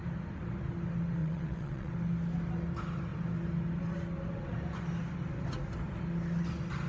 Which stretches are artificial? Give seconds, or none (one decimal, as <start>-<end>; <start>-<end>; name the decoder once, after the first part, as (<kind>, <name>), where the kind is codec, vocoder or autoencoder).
1.2-1.9 (vocoder, WaveNeXt)